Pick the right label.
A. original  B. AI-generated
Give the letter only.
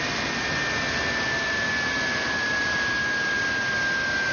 A